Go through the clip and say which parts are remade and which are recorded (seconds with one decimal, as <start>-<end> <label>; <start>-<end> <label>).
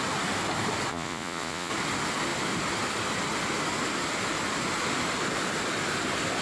0.0-0.9 recorded; 0.9-1.7 remade; 1.7-6.4 recorded